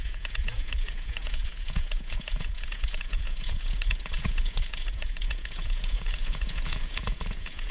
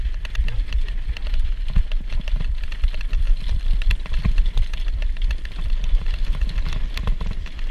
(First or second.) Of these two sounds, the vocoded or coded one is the first